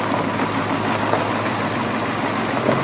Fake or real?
real